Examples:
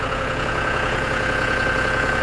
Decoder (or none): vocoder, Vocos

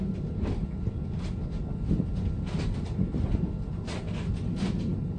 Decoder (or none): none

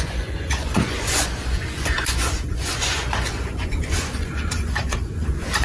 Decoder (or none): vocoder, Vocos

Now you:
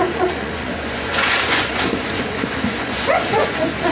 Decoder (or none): vocoder, Vocos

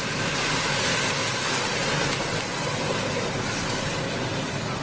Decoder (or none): none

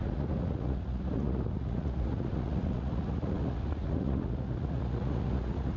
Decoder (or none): vocoder, Vocos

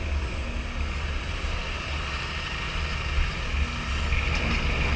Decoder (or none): none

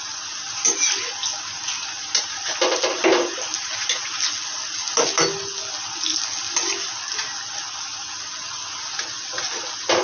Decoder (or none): none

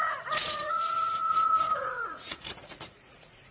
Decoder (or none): vocoder, Vocos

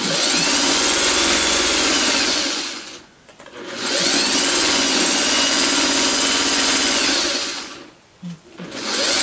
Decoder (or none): vocoder, Vocos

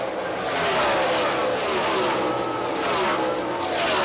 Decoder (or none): none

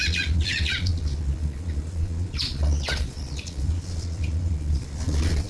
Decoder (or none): vocoder, Vocos